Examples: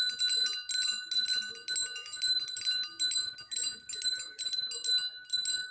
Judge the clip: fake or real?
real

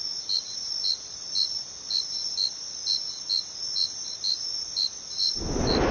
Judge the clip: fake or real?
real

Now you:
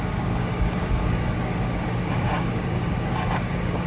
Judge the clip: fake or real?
fake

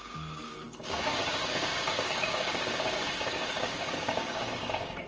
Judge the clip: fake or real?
fake